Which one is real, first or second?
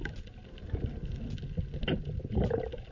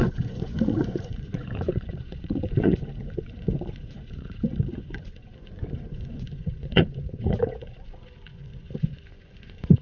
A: first